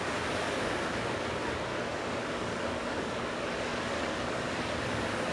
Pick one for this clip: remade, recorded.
remade